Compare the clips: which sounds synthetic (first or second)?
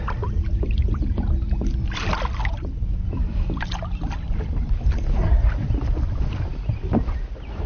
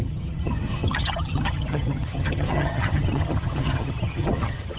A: second